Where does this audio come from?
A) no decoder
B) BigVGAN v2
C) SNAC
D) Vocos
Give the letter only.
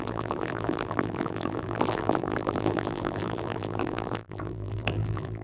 B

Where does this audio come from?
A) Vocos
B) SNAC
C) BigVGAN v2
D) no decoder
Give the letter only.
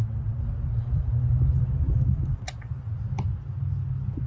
D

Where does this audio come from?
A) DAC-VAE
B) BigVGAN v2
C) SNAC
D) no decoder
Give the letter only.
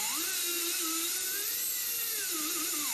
D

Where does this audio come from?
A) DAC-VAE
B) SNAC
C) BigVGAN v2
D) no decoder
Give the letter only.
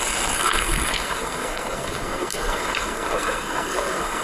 B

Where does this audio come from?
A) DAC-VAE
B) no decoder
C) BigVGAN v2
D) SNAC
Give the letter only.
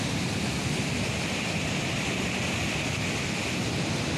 B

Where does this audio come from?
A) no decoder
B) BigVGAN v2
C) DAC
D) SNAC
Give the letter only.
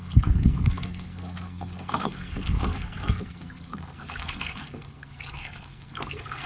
D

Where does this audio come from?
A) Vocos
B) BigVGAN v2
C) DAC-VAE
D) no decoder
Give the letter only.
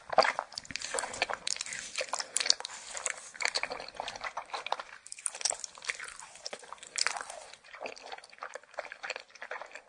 B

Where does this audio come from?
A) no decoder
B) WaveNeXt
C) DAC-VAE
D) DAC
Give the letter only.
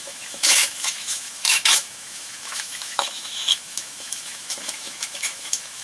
C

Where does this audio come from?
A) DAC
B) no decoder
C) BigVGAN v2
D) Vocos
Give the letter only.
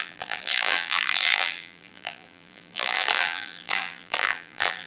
C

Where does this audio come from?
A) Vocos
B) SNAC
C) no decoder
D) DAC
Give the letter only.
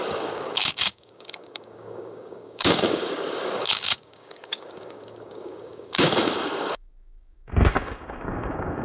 D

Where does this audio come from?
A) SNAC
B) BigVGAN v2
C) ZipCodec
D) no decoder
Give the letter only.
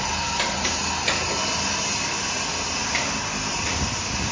D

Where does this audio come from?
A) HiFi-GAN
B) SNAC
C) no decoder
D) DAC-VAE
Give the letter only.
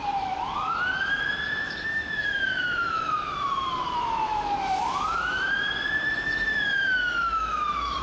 D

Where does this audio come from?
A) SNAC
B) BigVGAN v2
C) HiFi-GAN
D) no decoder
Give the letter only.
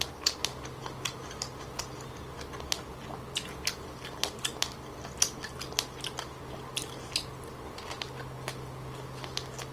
D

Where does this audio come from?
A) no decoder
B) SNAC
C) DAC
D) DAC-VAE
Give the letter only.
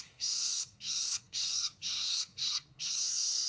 B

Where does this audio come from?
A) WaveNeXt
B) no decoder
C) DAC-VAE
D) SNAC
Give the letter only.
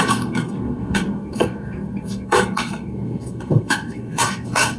D